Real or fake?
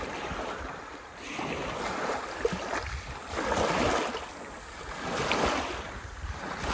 real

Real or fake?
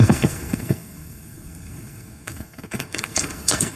fake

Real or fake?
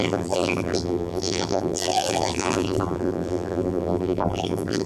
fake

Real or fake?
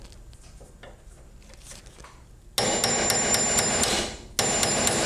real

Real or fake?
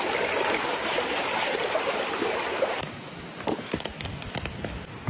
real